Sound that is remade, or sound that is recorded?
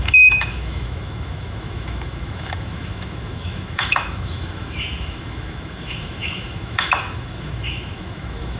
remade